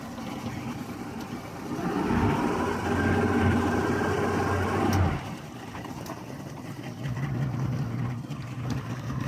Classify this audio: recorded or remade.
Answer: recorded